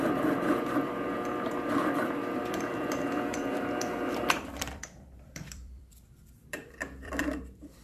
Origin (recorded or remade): remade